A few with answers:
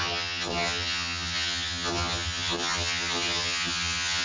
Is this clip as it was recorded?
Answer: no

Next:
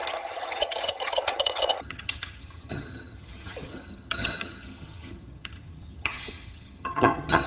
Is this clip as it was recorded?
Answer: no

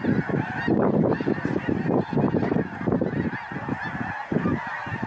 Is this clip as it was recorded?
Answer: yes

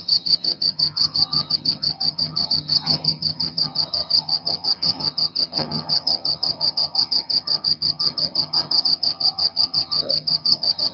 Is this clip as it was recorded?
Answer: no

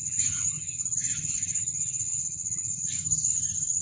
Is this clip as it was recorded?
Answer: no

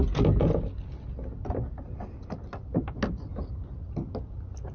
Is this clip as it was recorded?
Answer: yes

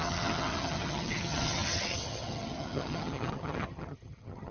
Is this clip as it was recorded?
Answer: no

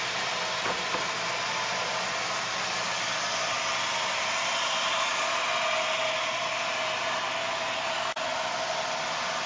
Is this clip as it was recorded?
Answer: yes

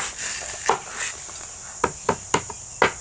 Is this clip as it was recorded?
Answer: yes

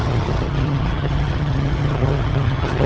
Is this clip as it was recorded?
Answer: no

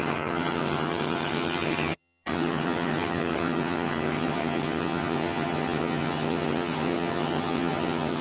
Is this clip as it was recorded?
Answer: no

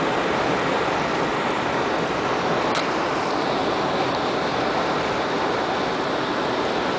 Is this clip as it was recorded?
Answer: yes